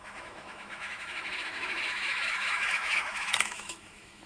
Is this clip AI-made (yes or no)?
yes